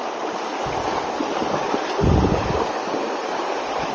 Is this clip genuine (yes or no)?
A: yes